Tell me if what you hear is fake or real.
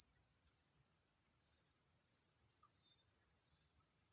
real